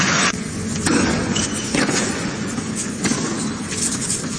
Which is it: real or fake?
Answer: fake